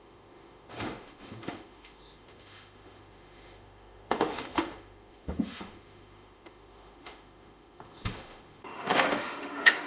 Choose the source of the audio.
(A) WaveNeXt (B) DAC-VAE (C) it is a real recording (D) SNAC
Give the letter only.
B